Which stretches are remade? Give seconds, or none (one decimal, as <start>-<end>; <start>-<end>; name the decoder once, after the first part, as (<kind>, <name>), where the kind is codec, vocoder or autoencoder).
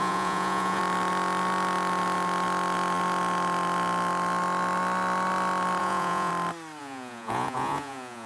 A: 0.0-0.8 (vocoder, Vocos); 5.8-6.3; 6.8-8.3